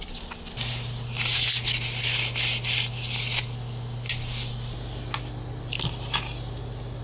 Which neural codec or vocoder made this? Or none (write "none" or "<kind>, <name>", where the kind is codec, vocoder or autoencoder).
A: none